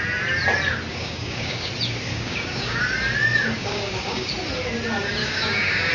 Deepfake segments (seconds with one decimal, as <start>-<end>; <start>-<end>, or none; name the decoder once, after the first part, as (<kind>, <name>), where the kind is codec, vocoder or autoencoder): 0.9-1.7 (codec, DAC); 2.1-2.8; 3.6-4.3; 5.2-5.9